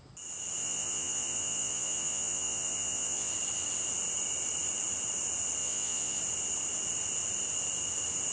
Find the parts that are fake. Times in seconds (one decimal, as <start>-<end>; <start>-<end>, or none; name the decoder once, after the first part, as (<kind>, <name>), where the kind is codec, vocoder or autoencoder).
0.6-3.3 (vocoder, Vocos); 5.6-6.2